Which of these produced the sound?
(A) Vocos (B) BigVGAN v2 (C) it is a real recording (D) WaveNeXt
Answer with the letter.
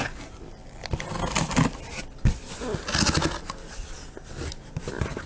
C